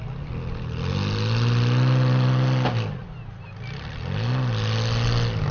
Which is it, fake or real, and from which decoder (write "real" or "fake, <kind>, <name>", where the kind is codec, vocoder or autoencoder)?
real